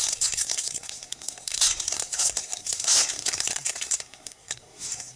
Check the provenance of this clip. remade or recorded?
remade